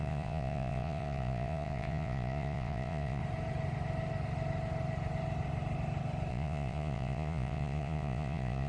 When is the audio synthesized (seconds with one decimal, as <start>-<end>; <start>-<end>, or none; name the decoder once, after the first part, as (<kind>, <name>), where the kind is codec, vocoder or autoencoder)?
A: 0.0-3.2 (vocoder, Vocos); 6.3-8.7